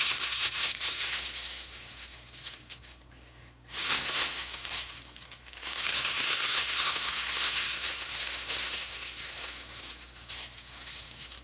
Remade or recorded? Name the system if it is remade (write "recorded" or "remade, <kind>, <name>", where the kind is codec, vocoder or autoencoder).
remade, codec, SNAC